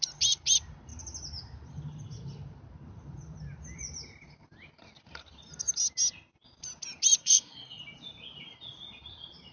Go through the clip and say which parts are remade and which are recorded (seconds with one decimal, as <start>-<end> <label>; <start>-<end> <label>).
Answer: 0.0-7.2 recorded; 7.2-7.8 remade; 7.8-9.5 recorded